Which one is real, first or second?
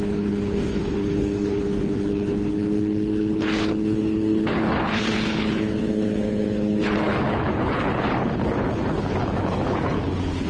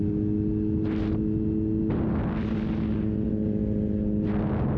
second